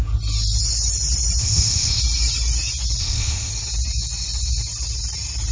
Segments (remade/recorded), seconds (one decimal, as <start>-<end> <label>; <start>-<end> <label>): 0.0-1.4 recorded; 1.4-2.0 remade; 2.0-3.0 recorded; 3.0-3.5 remade; 3.5-5.5 recorded